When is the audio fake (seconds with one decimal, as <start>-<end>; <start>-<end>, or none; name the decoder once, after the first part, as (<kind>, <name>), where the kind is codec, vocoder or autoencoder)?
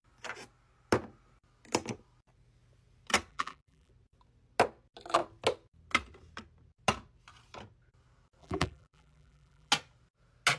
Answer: 3.3-3.9 (vocoder, BigVGAN v2); 8.4-9.7